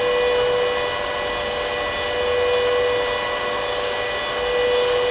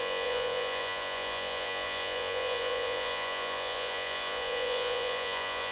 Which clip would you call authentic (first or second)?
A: first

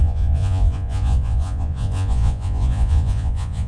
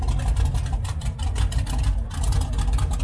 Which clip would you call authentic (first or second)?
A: second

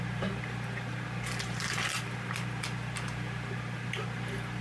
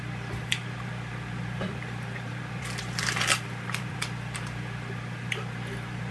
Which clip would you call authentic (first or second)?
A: first